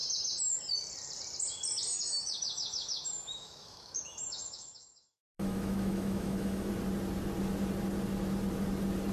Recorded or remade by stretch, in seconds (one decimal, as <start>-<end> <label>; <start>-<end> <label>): 0.0-1.9 recorded; 1.9-6.7 remade; 6.7-9.1 recorded